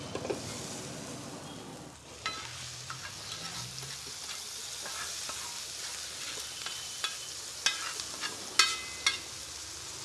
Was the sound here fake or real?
real